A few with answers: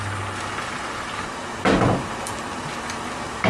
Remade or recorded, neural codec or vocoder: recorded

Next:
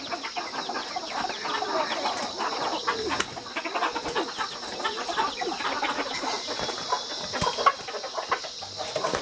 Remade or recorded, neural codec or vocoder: recorded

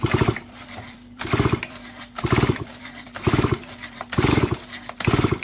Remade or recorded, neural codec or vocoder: remade, vocoder, BigVGAN v2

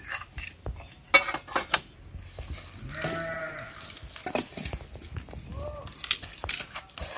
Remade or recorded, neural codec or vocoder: recorded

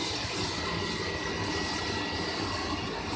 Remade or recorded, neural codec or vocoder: recorded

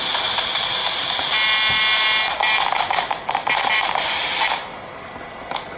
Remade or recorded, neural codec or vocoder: recorded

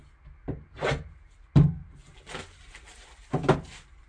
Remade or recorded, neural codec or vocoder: recorded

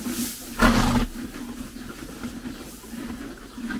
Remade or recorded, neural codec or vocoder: recorded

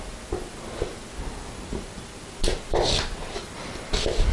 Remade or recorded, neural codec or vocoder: remade, vocoder, BigVGAN v2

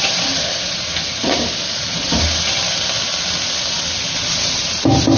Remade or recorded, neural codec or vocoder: recorded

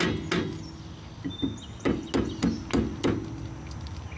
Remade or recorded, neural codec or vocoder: recorded